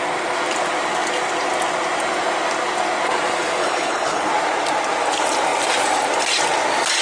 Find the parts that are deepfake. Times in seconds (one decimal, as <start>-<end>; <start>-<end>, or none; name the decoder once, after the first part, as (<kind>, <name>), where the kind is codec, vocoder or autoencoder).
3.6-4.3 (codec, HILCodec)